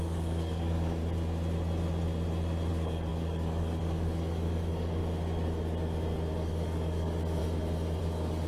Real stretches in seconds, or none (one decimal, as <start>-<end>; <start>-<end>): 1.0-2.7; 5.0-6.3; 7.4-8.0